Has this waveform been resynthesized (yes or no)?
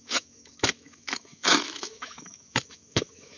yes